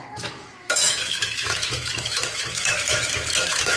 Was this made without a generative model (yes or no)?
no